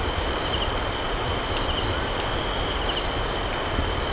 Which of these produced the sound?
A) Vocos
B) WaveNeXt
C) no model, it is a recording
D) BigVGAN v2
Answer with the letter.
C